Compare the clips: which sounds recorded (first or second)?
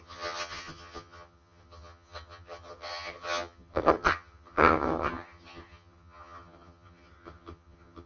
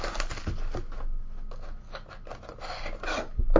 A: second